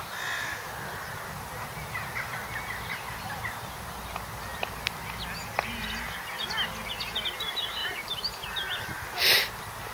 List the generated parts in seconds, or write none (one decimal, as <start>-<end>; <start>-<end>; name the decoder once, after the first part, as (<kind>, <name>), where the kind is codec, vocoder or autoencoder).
7.8-8.6 (vocoder, BigVGAN v2)